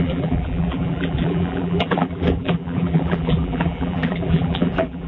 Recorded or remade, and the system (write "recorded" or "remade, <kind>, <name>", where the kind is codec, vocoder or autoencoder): remade, vocoder, BigVGAN v2